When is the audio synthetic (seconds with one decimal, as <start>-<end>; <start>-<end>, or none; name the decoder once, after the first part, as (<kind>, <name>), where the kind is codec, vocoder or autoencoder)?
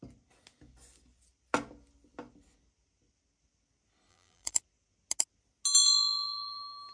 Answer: 4.1-4.6 (vocoder, BigVGAN v2)